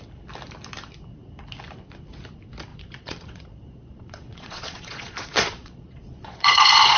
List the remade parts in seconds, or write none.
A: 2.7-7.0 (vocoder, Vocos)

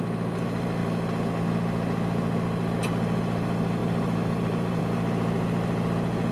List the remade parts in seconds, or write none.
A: 3.8-4.8 (vocoder, BigVGAN v2)

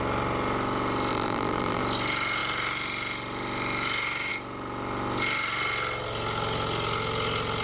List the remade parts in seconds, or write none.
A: 1.1-1.8 (vocoder, BigVGAN v2)

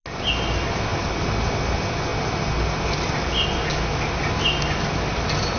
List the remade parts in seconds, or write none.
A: none